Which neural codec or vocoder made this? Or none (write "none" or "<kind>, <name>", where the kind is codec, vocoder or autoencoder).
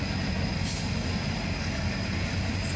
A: none